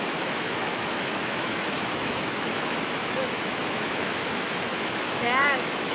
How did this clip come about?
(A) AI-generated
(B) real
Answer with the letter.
A